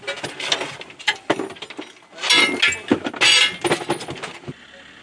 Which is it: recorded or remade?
recorded